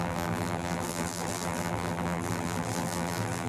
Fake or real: fake